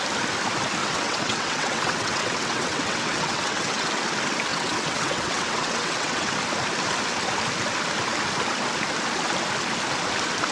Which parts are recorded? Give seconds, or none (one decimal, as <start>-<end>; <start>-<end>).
0.0-0.8; 3.9-4.5; 6.3-10.5